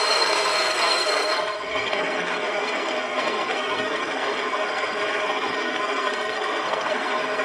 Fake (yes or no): yes